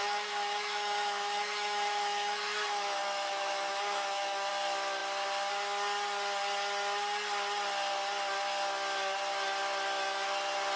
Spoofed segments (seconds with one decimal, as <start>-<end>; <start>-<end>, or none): 0.0-4.5